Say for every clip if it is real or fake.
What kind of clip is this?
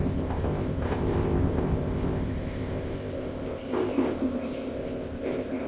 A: fake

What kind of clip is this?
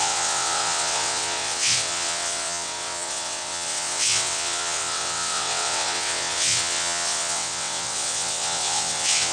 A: fake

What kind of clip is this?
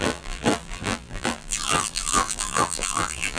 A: fake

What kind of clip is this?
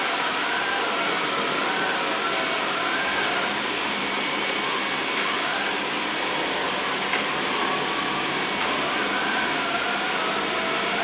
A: real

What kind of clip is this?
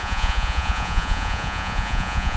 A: fake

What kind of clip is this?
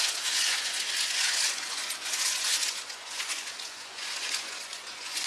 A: fake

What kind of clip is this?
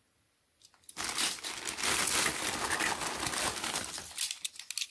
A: real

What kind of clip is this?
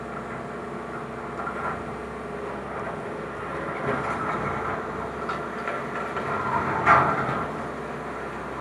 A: real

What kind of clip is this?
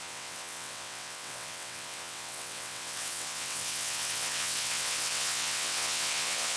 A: fake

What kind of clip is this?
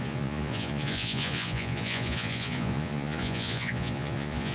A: fake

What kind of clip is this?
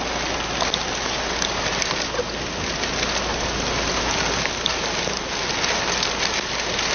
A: real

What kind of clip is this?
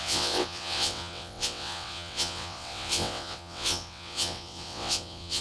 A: fake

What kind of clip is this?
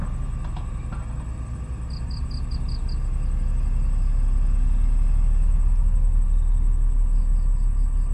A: real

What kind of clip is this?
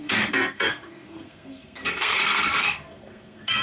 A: fake